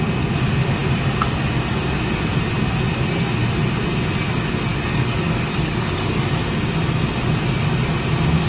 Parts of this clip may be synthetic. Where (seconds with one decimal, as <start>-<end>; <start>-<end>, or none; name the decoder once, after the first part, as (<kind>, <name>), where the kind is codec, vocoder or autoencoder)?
4.7-6.4 (codec, DAC)